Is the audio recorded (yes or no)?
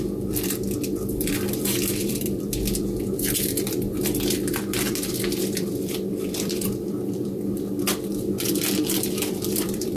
no